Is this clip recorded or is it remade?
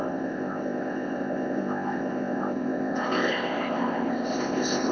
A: remade